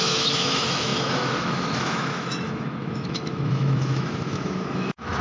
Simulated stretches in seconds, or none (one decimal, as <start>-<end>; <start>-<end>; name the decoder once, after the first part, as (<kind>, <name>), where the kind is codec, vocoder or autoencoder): 0.0-5.2 (autoencoder, DAC-VAE)